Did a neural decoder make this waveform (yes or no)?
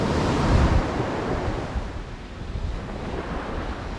no